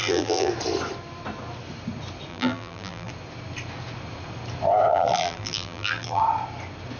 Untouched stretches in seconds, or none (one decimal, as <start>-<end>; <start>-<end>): 0.5-2.3; 3.1-4.9; 6.2-7.0